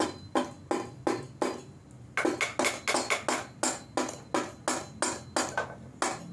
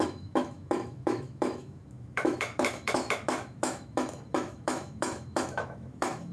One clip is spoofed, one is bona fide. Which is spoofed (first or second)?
second